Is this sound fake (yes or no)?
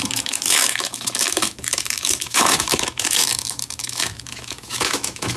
yes